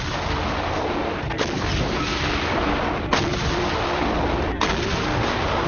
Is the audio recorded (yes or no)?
yes